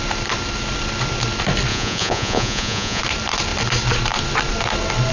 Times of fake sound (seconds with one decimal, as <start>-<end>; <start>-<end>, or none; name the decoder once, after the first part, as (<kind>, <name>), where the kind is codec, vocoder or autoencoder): 1.7-3.0 (vocoder, Vocos)